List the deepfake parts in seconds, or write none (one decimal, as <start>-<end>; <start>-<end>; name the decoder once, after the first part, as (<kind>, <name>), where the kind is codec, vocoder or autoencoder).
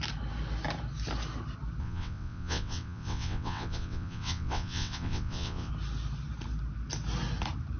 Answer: 1.8-5.7 (vocoder, WaveNeXt)